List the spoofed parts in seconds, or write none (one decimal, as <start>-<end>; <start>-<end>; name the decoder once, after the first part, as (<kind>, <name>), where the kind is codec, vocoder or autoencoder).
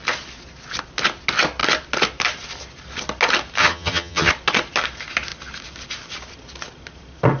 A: 3.6-4.3 (vocoder, HiFi-GAN)